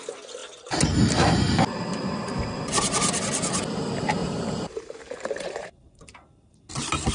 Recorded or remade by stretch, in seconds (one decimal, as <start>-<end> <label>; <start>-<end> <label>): 0.0-0.4 recorded; 0.4-1.4 remade; 1.4-4.2 recorded; 4.2-6.6 remade; 6.6-7.1 recorded